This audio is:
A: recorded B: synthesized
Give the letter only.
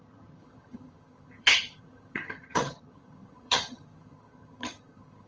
B